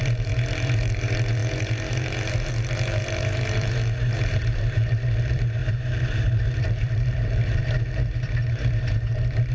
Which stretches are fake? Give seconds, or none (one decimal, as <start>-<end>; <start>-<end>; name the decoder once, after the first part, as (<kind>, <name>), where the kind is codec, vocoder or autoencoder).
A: 0.0-9.5 (vocoder, BigVGAN v2)